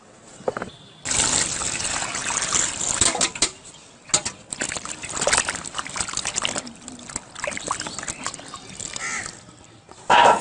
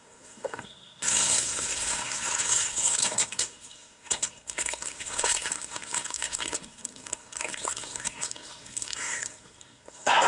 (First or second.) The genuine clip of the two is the first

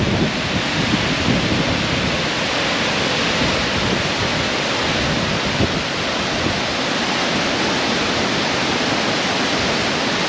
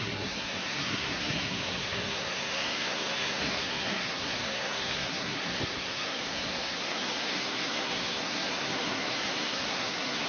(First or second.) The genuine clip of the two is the first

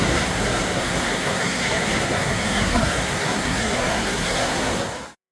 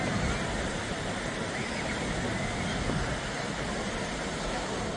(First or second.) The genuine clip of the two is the second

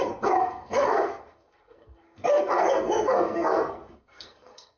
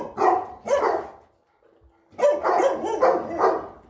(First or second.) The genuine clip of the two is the second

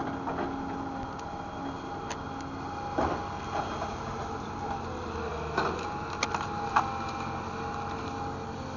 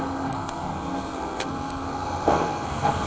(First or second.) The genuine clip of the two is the first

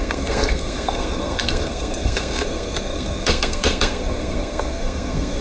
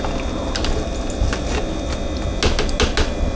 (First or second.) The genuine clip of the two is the second